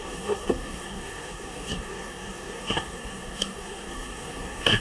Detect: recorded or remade remade